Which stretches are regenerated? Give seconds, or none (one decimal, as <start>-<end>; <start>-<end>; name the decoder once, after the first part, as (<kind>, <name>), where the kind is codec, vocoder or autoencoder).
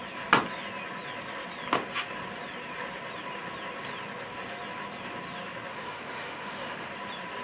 5.7-6.9 (autoencoder, DAC-VAE)